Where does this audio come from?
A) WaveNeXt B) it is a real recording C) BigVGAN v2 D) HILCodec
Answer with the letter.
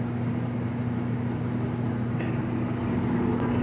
B